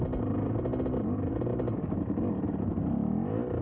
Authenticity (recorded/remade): recorded